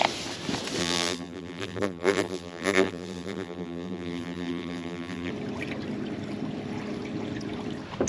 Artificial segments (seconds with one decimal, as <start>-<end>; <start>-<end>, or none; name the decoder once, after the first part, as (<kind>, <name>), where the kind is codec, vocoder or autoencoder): 0.8-5.3 (vocoder, BigVGAN v2)